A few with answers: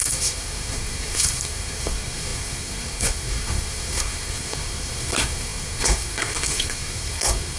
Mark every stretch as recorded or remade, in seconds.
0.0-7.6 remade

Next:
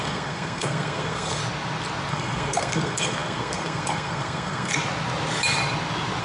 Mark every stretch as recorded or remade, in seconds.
0.0-1.4 remade; 1.4-2.1 recorded; 2.1-4.7 remade; 4.7-6.2 recorded